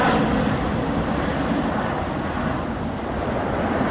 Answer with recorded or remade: recorded